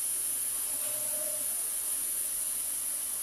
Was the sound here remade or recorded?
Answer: remade